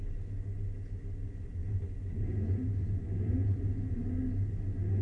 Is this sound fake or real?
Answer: real